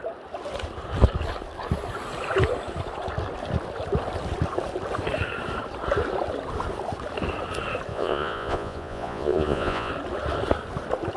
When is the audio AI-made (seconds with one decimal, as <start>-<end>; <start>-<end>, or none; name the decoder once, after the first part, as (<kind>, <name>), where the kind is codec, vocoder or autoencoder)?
7.9-9.9 (vocoder, Vocos)